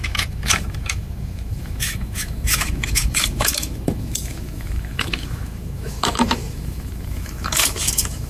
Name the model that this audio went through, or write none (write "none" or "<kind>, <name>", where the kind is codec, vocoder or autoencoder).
autoencoder, DAC-VAE